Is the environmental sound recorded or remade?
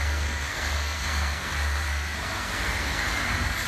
remade